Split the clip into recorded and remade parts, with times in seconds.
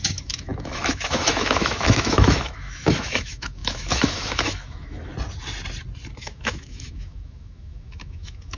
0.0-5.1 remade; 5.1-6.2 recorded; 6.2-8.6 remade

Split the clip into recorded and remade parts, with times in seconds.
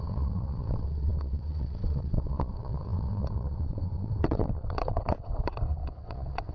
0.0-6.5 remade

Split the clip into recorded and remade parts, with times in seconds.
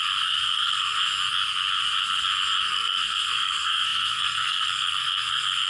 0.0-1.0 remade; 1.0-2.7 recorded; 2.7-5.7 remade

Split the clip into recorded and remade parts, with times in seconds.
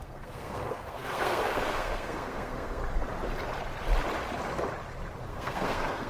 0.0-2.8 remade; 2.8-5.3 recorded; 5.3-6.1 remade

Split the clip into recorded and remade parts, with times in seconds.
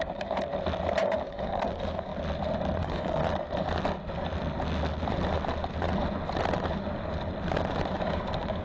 0.0-0.5 remade; 0.5-1.0 recorded; 1.0-2.1 remade; 2.1-2.8 recorded; 2.8-3.2 remade; 3.2-8.0 recorded; 8.0-8.6 remade